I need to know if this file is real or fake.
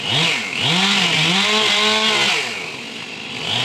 real